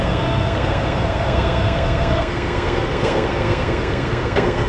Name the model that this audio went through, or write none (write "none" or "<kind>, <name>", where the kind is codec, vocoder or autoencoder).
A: codec, SNAC